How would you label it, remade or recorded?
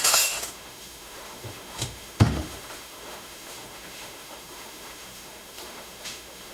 remade